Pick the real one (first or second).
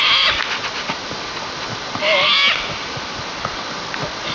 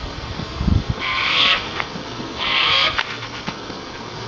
first